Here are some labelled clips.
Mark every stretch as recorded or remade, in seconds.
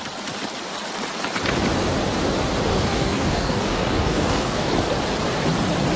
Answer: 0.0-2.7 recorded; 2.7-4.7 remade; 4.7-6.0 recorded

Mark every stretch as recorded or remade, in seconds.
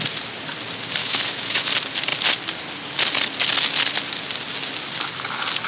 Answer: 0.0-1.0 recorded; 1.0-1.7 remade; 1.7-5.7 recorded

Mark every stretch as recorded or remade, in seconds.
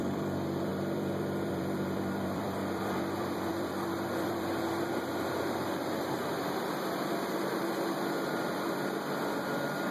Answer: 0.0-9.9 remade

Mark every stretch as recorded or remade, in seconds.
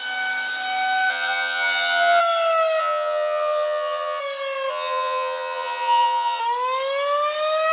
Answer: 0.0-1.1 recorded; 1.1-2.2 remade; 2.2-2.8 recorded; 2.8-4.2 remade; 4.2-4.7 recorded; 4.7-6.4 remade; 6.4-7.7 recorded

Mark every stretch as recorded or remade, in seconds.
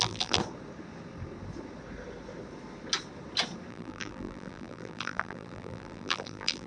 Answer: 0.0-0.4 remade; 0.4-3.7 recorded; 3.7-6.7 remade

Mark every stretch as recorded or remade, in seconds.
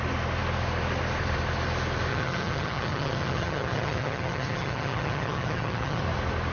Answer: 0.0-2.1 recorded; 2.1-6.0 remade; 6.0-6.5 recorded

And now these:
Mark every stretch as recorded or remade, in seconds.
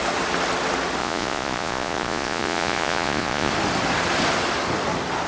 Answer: 0.0-1.0 recorded; 1.0-3.5 remade; 3.5-5.3 recorded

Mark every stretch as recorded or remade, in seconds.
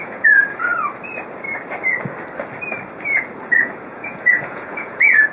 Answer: 0.0-0.7 remade; 0.7-3.6 recorded; 3.6-5.3 remade